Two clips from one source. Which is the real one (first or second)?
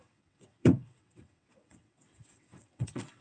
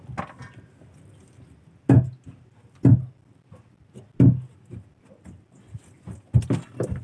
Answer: second